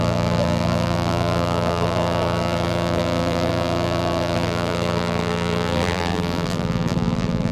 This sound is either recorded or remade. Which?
remade